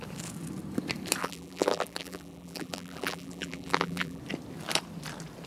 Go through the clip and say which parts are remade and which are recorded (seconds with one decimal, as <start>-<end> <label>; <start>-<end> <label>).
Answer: 0.0-1.2 recorded; 1.2-4.2 remade; 4.2-5.5 recorded